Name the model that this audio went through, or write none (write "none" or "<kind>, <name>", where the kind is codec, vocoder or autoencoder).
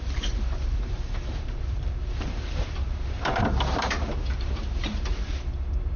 vocoder, BigVGAN v2